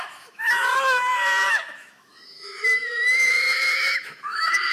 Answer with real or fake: fake